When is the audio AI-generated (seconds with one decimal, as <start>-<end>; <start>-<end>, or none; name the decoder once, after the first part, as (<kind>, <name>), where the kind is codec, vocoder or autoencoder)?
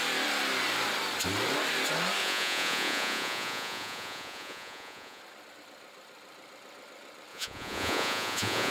2.2-5.2 (vocoder, Vocos); 7.3-8.7